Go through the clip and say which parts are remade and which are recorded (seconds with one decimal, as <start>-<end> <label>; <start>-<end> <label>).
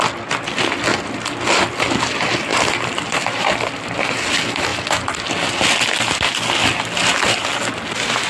0.0-2.5 recorded; 2.5-3.9 remade; 3.9-8.3 recorded